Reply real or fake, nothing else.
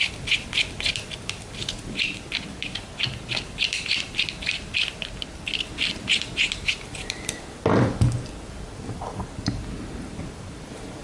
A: fake